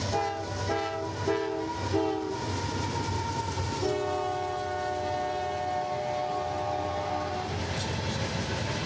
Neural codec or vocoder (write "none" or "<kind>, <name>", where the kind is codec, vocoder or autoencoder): none